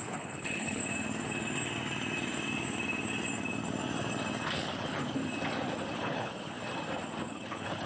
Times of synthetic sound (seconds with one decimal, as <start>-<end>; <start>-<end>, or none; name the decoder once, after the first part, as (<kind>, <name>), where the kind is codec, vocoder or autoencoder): 0.0-0.8 (codec, HILCodec); 4.5-5.2; 5.9-6.6; 7.2-7.9